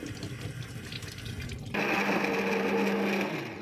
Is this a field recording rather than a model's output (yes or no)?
yes